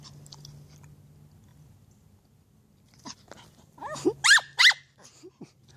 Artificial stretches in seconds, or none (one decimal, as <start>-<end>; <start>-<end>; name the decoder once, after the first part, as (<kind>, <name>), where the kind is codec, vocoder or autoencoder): none